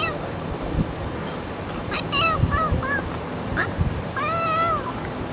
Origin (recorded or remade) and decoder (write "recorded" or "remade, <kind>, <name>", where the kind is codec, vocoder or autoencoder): recorded